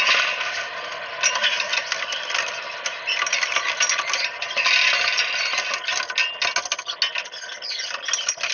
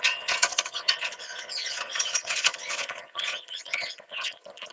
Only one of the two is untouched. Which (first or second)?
first